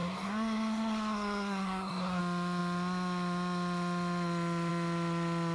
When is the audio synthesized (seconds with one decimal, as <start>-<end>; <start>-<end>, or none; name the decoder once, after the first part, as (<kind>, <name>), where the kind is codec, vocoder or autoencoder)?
0.0-2.2 (codec, SNAC)